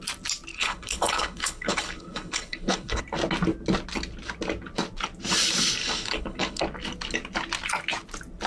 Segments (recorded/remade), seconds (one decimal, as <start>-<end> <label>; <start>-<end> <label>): 0.0-0.5 recorded; 0.5-3.0 remade; 3.0-5.8 recorded; 5.8-6.6 remade; 6.6-8.5 recorded